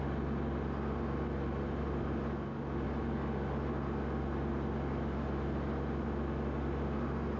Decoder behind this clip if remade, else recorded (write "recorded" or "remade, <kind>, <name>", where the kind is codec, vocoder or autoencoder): recorded